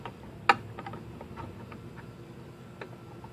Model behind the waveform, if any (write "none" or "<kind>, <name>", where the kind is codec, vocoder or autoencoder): none